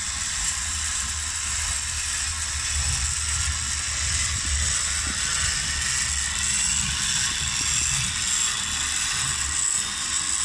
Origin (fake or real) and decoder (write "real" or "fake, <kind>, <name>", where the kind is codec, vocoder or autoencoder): real